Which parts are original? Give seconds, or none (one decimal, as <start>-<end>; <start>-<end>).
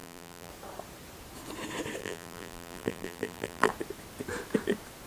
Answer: 0.5-2.0; 3.7-5.1